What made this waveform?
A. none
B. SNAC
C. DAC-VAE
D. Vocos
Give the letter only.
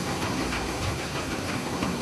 B